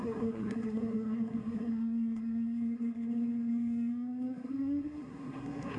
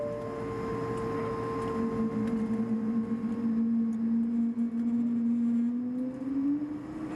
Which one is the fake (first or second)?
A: first